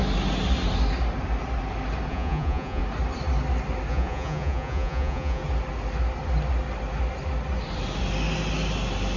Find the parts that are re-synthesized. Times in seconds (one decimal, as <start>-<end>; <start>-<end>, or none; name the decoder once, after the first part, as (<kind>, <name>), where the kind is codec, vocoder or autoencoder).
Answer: 2.1-2.8 (vocoder, Vocos); 3.9-5.4